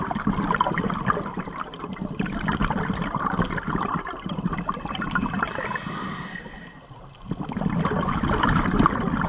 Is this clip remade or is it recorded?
recorded